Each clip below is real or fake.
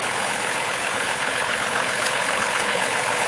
fake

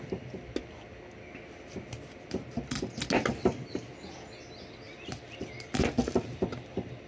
real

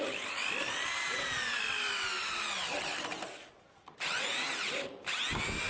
real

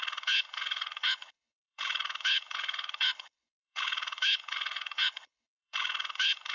fake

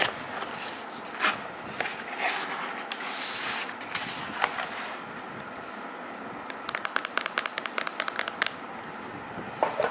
real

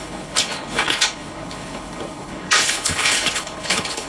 fake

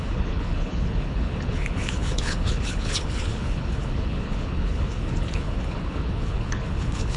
fake